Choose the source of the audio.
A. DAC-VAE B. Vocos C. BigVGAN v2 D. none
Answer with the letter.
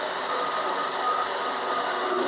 D